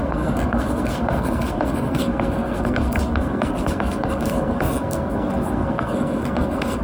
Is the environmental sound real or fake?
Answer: fake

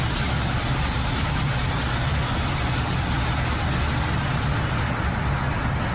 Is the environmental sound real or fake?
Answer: real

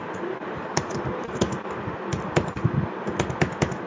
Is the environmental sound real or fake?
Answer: real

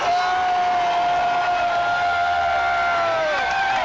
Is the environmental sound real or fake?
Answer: real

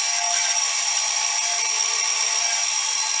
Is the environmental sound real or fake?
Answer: real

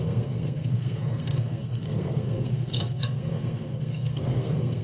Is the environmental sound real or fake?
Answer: fake